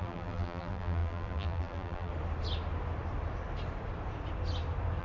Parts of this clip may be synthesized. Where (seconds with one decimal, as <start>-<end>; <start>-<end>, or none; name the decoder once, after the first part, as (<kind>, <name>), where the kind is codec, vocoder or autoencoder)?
0.0-2.1 (vocoder, BigVGAN v2)